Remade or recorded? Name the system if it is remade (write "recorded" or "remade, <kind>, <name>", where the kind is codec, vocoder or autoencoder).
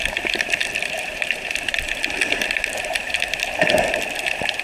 remade, vocoder, BigVGAN v2